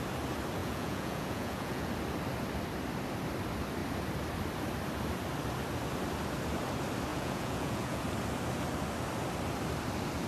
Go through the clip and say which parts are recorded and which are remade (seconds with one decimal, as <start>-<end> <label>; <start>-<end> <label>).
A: 0.0-0.6 recorded; 0.6-1.9 remade; 1.9-7.1 recorded; 7.1-8.0 remade; 8.0-10.3 recorded